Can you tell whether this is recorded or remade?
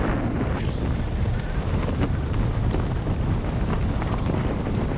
recorded